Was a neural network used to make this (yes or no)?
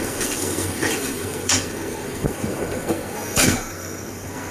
yes